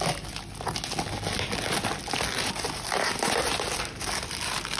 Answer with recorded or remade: recorded